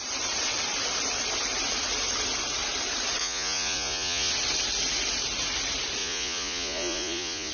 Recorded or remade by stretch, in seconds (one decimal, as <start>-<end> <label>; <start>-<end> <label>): 0.0-3.2 recorded; 3.2-4.3 remade; 4.3-6.0 recorded; 6.0-7.5 remade